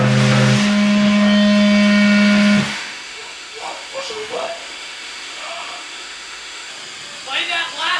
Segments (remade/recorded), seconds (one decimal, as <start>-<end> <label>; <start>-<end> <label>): 0.0-2.7 recorded; 2.7-6.7 remade; 6.7-8.0 recorded